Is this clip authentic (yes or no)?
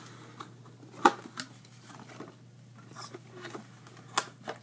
yes